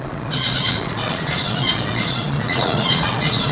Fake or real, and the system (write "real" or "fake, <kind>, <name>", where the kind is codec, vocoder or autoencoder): fake, vocoder, Vocos